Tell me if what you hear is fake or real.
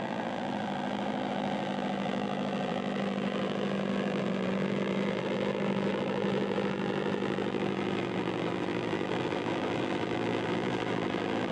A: fake